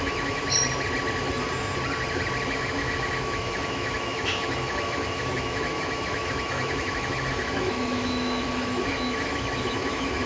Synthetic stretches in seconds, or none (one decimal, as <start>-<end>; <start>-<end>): 0.0-0.4; 2.5-10.3